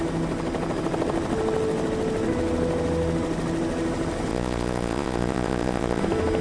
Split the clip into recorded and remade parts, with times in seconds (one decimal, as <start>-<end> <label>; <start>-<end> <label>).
0.0-4.3 recorded; 4.3-6.0 remade; 6.0-6.4 recorded

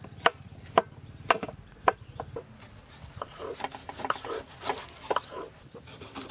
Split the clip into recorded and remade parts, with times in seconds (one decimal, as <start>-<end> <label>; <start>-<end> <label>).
0.0-1.4 recorded; 1.4-2.1 remade; 2.1-3.8 recorded; 3.8-4.6 remade; 4.6-6.3 recorded

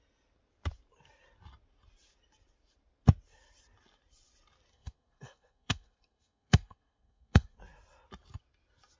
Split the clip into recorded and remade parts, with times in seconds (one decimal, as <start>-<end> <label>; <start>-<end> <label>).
0.0-4.7 recorded; 4.7-7.6 remade; 7.6-9.0 recorded

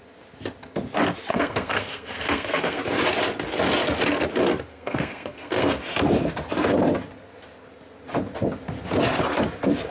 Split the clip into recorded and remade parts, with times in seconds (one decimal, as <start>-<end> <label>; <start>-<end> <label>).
0.0-1.3 recorded; 1.3-2.8 remade; 2.8-4.7 recorded; 4.7-5.8 remade; 5.8-9.9 recorded

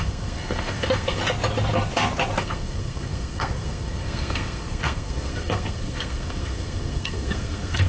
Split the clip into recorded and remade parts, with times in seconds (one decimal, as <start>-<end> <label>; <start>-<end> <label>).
0.0-1.2 remade; 1.2-2.4 recorded; 2.4-7.9 remade